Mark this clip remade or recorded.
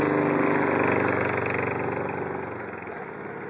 recorded